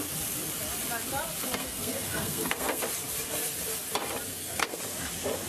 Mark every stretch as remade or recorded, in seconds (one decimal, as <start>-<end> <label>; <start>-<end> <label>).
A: 0.0-1.6 recorded; 1.6-2.8 remade; 2.8-4.3 recorded; 4.3-4.8 remade; 4.8-5.5 recorded